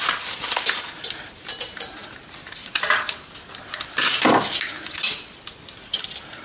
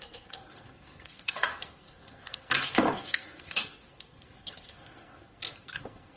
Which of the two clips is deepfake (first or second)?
second